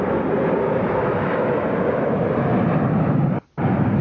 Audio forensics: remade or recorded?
recorded